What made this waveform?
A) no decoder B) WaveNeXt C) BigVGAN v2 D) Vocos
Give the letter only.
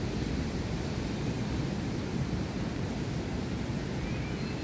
A